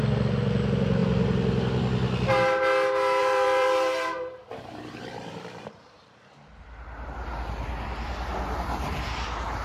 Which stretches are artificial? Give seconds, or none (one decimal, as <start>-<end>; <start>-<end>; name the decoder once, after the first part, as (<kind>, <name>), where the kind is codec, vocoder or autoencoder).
3.2-6.6 (vocoder, BigVGAN v2)